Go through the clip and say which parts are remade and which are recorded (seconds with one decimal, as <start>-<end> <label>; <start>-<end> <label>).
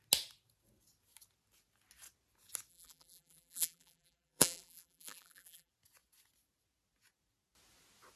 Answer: 0.0-2.7 recorded; 2.7-5.7 remade; 5.7-8.2 recorded